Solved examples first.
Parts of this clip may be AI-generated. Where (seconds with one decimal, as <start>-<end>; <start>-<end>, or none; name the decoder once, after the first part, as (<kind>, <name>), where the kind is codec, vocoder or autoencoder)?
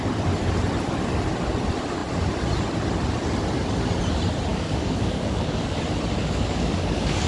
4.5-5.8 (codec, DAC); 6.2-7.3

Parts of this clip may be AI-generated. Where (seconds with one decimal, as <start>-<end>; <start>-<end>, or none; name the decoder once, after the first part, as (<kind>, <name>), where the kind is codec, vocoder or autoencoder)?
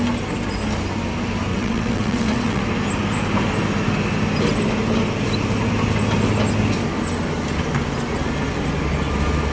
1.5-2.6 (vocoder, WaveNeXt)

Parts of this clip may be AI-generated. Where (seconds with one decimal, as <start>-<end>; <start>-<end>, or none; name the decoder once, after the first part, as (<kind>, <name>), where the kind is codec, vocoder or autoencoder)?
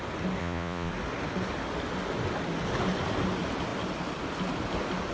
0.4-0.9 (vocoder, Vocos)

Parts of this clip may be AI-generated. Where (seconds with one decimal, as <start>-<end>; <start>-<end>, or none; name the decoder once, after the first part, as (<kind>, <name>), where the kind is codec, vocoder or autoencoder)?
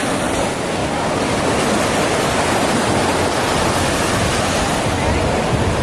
none